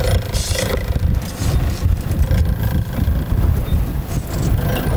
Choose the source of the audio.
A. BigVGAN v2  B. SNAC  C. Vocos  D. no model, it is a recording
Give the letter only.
D